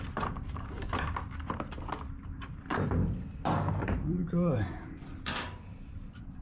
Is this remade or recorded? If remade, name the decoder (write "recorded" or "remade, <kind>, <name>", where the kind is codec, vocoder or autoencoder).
remade, vocoder, BigVGAN v2